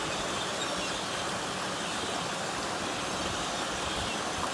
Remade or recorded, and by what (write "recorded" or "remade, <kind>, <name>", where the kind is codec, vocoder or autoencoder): remade, vocoder, BigVGAN v2